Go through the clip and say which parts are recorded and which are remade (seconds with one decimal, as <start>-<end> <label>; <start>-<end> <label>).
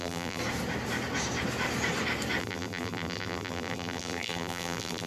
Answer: 0.0-0.4 remade; 0.4-2.4 recorded; 2.4-5.1 remade